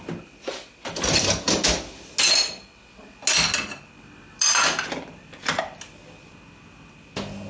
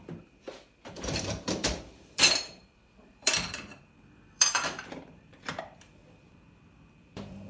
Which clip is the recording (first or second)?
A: first